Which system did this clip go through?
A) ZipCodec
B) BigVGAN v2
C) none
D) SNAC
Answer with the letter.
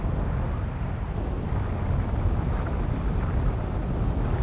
C